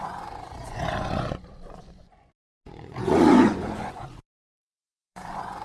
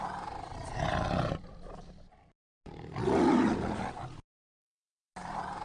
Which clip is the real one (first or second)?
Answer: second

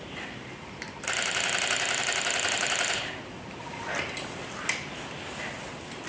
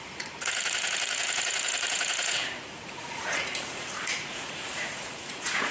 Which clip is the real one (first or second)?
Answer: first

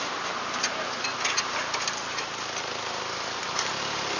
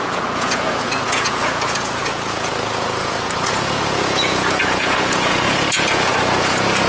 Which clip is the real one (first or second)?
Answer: first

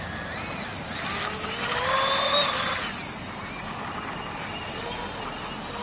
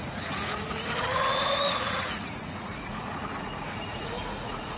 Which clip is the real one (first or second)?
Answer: first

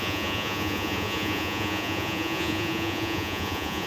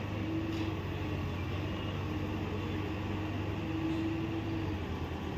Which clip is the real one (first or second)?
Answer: second